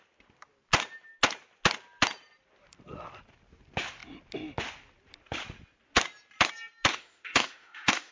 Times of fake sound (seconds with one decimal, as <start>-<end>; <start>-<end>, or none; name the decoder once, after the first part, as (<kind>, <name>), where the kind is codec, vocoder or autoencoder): 6.9-8.1 (autoencoder, DAC-VAE)